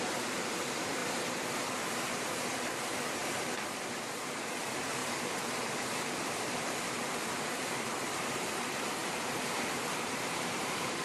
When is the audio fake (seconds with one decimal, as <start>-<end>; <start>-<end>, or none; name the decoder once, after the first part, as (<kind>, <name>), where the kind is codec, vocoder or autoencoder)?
0.0-3.2 (vocoder, BigVGAN v2); 4.6-11.0